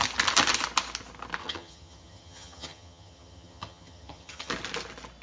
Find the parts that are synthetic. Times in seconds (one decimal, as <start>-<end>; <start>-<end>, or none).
1.4-4.5